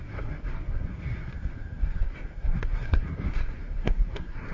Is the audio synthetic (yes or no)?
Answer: yes